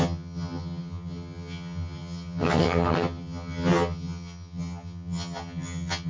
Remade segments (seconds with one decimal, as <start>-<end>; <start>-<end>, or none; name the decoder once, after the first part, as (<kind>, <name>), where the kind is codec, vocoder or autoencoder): 0.0-6.1 (vocoder, HiFi-GAN)